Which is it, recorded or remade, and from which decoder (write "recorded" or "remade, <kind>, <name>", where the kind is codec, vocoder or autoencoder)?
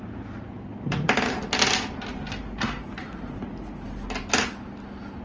recorded